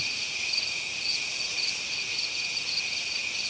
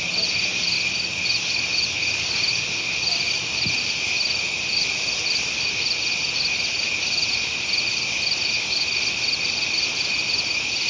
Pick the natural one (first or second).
second